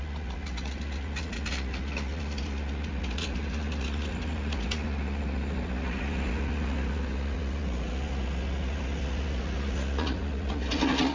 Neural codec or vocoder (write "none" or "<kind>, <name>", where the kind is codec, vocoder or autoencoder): vocoder, Vocos